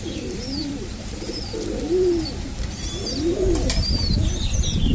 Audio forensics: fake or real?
fake